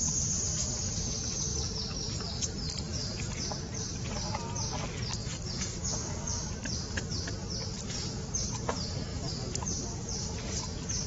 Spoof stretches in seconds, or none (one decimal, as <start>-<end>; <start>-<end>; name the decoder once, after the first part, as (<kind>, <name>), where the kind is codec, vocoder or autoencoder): 1.5-3.6 (vocoder, BigVGAN v2); 5.2-6.5; 7.4-8.5; 9.1-10.6